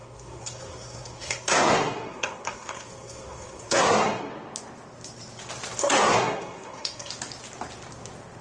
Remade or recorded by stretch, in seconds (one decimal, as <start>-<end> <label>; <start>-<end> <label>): 0.0-4.3 remade; 4.3-5.8 recorded; 5.8-7.1 remade; 7.1-8.4 recorded